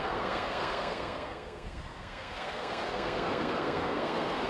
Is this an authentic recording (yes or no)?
no